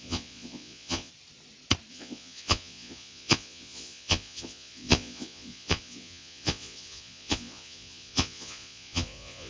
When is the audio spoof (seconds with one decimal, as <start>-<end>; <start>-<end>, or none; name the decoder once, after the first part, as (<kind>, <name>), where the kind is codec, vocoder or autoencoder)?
0.0-1.1 (vocoder, Vocos); 1.9-9.5